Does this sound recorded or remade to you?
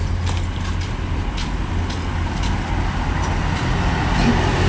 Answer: recorded